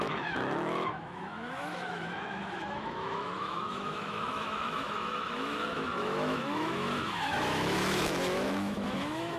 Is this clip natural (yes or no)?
no